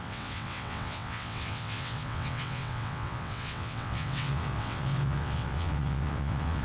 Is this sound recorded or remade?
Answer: remade